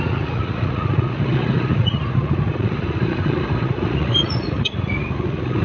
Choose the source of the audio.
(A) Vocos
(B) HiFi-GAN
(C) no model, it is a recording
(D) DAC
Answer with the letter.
A